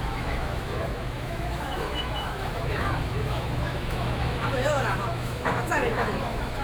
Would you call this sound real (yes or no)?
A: no